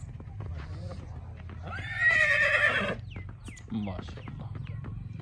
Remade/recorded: recorded